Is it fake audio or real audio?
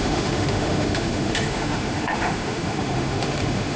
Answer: fake